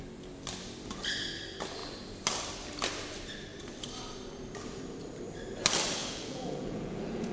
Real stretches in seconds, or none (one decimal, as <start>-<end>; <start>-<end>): 0.0-6.0